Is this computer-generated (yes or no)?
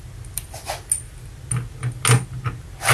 no